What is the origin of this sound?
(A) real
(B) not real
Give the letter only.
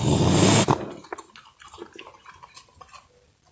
A